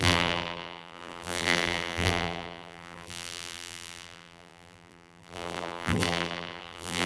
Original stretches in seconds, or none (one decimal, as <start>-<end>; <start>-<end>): none